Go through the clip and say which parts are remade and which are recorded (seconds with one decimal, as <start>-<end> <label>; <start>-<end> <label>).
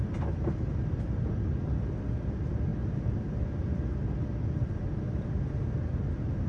0.0-6.5 recorded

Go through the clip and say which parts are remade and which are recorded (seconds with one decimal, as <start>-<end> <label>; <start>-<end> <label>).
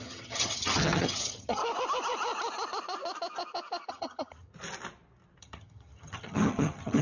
0.0-1.6 remade; 1.6-3.9 recorded; 3.9-4.5 remade; 4.5-5.4 recorded; 5.4-7.0 remade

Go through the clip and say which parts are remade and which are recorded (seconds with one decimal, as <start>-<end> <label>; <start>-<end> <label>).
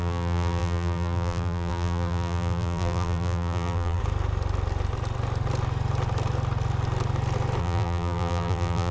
0.0-4.0 remade; 4.0-7.6 recorded; 7.6-8.9 remade